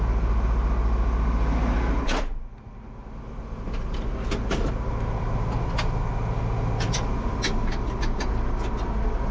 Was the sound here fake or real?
real